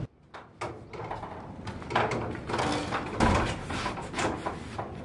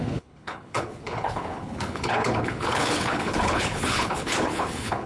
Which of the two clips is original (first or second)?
first